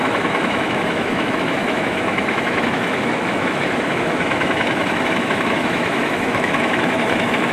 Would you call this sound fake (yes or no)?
yes